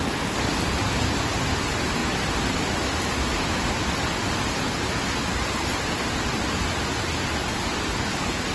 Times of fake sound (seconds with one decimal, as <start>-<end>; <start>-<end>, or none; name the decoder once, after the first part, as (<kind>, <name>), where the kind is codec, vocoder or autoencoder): 7.4-8.5 (vocoder, BigVGAN v2)